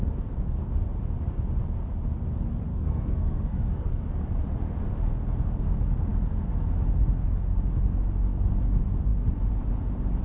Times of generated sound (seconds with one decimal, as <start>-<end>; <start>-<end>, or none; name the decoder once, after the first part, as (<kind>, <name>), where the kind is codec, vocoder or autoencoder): 2.7-4.0 (codec, SNAC)